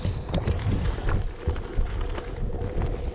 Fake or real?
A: real